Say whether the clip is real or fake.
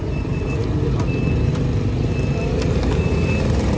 real